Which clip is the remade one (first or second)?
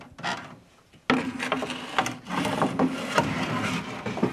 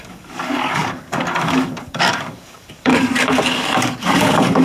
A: second